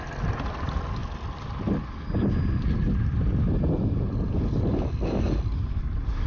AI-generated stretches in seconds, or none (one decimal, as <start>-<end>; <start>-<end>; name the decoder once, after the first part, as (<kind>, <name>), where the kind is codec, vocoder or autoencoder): none